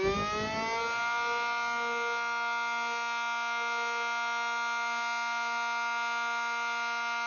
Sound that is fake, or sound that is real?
real